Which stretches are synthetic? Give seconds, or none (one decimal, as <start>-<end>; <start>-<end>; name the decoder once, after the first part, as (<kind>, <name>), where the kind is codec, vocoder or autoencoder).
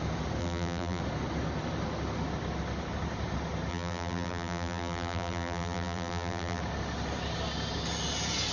0.4-1.0 (vocoder, BigVGAN v2); 3.7-6.6